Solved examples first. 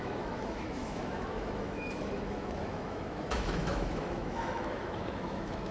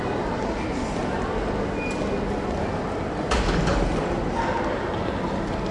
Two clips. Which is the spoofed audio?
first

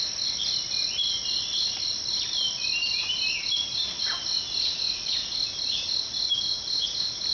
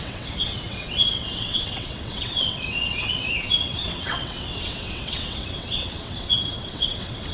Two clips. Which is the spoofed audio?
second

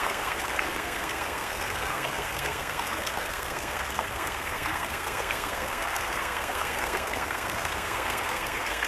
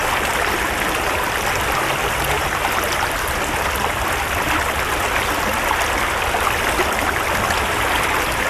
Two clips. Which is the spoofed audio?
first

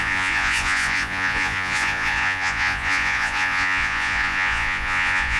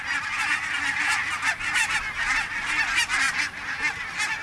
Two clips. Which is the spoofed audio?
first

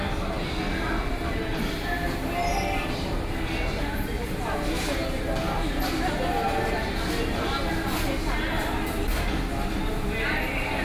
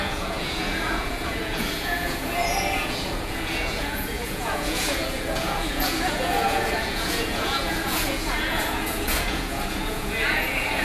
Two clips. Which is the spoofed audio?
second